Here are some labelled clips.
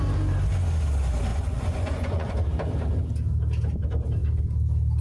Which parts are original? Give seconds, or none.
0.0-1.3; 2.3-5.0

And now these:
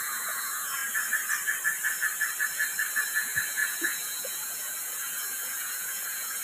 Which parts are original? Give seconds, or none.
0.8-2.9

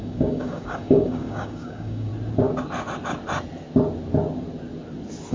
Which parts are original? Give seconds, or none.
2.1-5.3

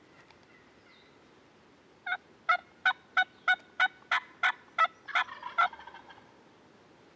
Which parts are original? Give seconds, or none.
0.0-7.2

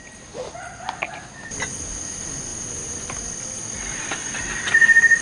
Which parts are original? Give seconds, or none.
0.0-5.2

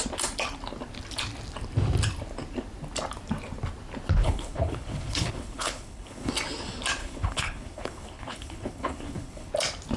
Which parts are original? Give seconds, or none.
0.0-4.2; 6.3-7.0; 9.5-10.0

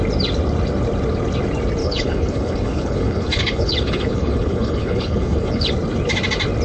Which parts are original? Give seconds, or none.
0.0-1.8; 5.7-6.6